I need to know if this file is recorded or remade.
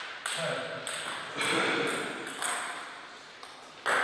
recorded